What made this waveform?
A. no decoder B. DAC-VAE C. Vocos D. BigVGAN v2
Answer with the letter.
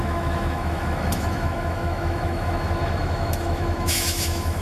B